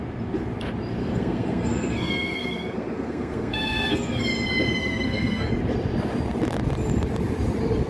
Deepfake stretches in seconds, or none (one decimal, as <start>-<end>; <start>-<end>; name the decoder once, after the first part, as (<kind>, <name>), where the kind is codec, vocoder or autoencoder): 1.0-4.2 (codec, SNAC); 4.8-5.5